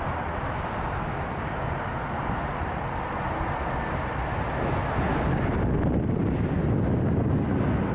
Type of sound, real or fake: real